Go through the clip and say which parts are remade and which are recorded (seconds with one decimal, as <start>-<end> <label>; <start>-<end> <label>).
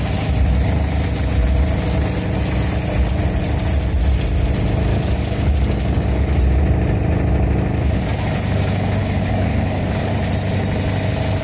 0.0-4.9 recorded; 4.9-6.4 remade; 6.4-9.0 recorded; 9.0-10.1 remade; 10.1-11.4 recorded